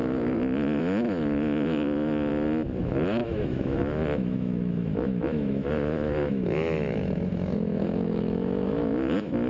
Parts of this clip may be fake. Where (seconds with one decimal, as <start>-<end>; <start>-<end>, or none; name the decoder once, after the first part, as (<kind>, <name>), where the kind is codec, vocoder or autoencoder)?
0.0-2.3 (autoencoder, DAC-VAE); 2.8-9.5